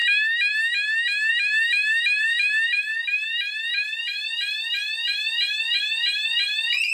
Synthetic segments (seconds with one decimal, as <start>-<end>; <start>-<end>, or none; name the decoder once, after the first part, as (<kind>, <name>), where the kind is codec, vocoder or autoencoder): 1.3-2.9 (vocoder, BigVGAN v2); 5.8-6.9